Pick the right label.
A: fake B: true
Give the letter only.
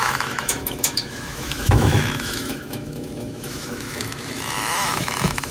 A